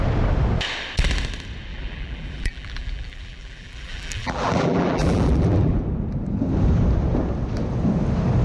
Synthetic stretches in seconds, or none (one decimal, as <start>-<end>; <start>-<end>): 1.7-5.8